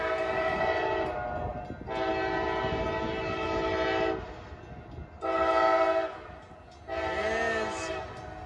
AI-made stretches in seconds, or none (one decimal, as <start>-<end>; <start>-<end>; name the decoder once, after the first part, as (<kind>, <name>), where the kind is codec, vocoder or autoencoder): none